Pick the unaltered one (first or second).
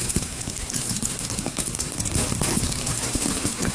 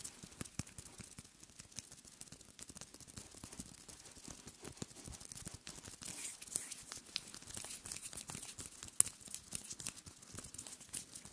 second